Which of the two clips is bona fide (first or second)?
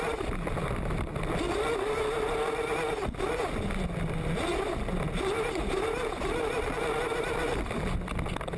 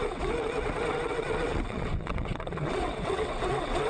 first